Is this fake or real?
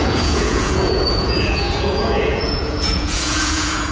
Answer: fake